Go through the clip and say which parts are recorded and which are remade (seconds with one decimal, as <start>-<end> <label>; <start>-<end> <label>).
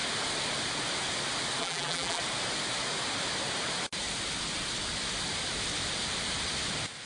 0.0-1.6 recorded; 1.6-2.2 remade; 2.2-7.1 recorded